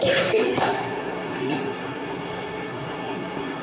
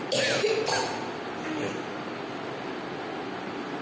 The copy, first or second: first